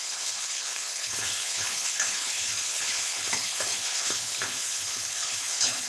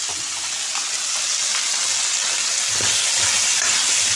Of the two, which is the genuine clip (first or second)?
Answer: second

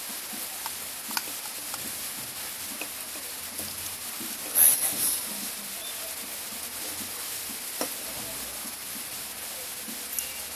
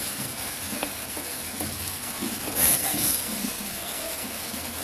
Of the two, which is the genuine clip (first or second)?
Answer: first